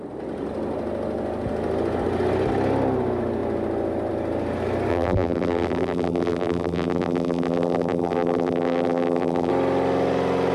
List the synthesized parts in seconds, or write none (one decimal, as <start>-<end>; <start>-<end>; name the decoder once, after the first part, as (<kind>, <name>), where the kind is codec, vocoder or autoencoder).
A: 4.9-9.5 (vocoder, BigVGAN v2)